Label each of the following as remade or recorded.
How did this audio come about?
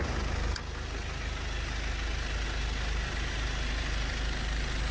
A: recorded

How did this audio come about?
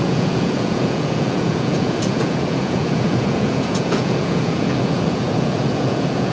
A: remade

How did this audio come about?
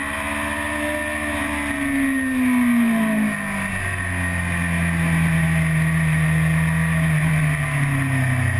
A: recorded